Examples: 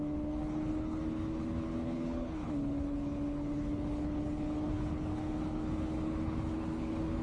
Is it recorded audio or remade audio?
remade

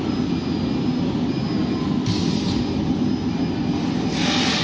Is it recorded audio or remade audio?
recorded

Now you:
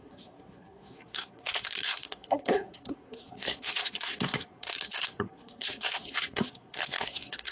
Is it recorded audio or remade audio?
remade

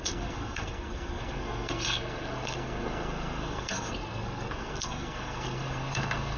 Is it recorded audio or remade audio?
remade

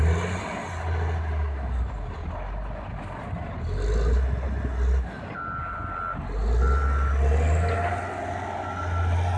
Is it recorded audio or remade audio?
recorded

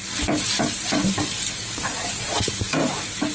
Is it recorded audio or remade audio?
remade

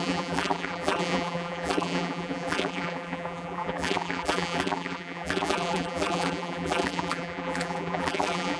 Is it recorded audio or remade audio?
remade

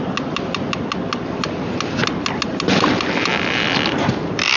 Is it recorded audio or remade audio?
recorded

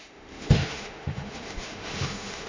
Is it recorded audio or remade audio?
remade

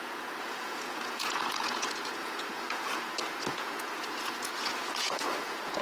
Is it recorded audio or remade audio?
remade